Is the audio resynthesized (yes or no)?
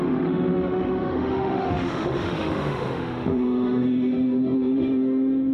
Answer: yes